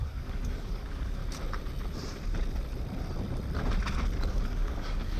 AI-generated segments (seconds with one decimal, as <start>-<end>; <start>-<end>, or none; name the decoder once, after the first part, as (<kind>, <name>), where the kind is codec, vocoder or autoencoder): 0.0-1.2 (codec, DAC); 4.3-5.2